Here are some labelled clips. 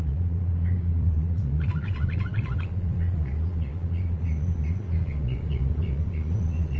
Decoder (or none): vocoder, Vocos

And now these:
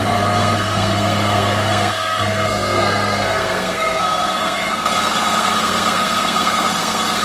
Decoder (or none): codec, SNAC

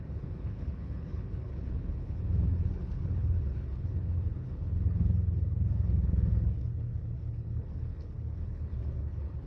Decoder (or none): codec, HILCodec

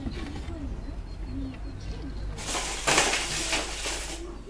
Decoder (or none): none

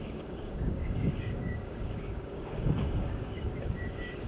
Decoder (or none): codec, DAC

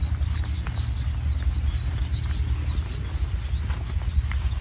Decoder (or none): none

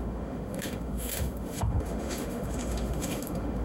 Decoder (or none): autoencoder, DAC-VAE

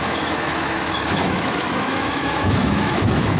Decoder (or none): autoencoder, DAC-VAE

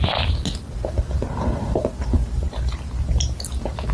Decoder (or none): none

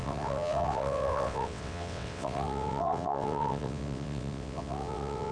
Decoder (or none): vocoder, WaveNeXt